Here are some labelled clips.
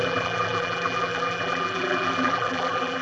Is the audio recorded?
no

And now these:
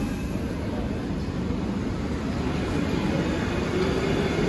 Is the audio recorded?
yes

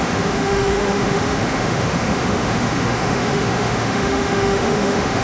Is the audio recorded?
no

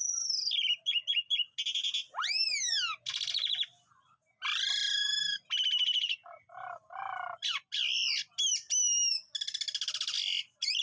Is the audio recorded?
yes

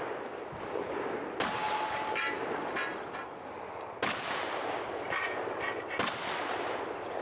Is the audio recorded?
yes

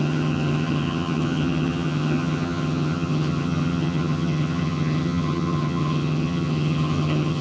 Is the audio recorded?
no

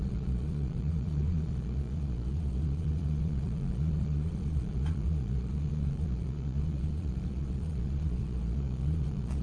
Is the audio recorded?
no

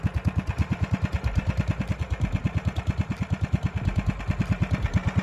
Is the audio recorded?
yes